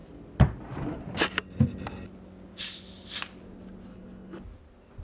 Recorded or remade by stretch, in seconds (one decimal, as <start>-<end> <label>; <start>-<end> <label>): 0.0-3.9 recorded; 3.9-4.4 remade; 4.4-5.0 recorded